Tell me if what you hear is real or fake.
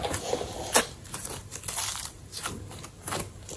real